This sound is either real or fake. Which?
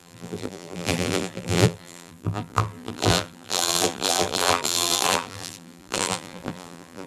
fake